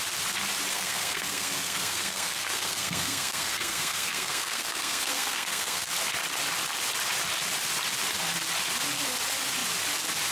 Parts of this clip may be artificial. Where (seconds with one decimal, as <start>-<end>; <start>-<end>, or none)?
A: 0.7-5.9